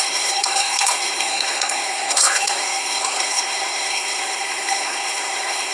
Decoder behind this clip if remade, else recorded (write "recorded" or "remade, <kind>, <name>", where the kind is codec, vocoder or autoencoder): remade, codec, SNAC